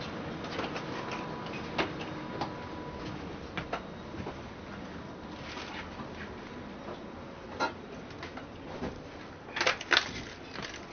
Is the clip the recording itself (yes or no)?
yes